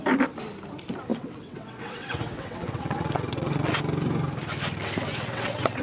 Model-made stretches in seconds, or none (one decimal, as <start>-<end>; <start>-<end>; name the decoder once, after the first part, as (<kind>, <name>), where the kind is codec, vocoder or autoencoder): 1.1-3.8 (vocoder, WaveNeXt); 5.1-5.8

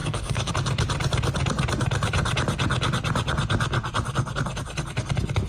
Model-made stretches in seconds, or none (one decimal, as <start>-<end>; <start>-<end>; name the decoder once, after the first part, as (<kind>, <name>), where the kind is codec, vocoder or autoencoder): 0.0-0.5 (codec, SNAC)